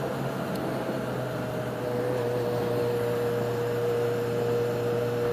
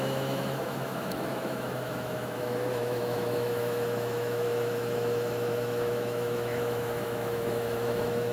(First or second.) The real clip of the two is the first